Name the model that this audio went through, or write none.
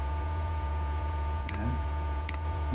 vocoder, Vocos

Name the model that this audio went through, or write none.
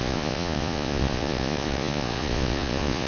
vocoder, Vocos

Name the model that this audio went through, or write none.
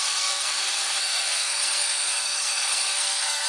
codec, SNAC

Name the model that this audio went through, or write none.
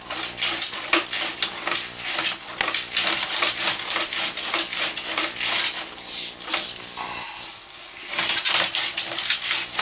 none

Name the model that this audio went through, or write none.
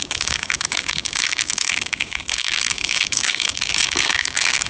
codec, DAC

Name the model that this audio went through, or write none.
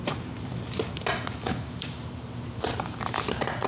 vocoder, BigVGAN v2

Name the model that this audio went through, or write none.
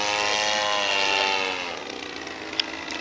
none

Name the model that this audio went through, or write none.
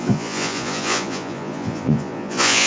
vocoder, Vocos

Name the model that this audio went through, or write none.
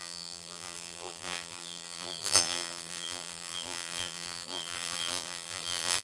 vocoder, BigVGAN v2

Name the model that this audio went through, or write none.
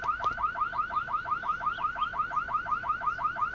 none